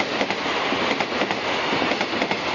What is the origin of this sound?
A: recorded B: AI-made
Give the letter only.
A